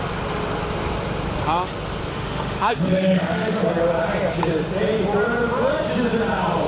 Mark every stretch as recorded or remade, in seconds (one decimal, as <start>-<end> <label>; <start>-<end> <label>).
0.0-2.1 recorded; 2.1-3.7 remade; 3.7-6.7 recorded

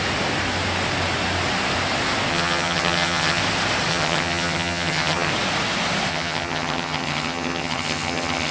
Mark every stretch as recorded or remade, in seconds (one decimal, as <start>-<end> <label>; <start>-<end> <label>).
0.0-2.3 recorded; 2.3-3.4 remade; 3.4-3.9 recorded; 3.9-5.3 remade; 5.3-6.1 recorded; 6.1-8.5 remade

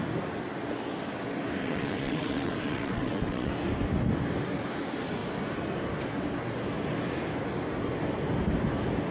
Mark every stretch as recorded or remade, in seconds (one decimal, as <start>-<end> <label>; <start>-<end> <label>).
0.0-1.6 recorded; 1.6-3.5 remade; 3.5-9.1 recorded